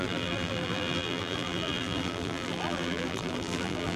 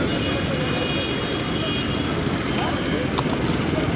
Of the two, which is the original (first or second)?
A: second